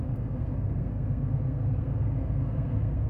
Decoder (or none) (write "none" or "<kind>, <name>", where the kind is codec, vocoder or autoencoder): codec, SNAC